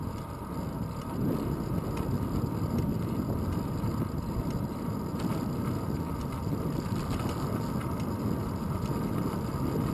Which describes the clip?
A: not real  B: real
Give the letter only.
B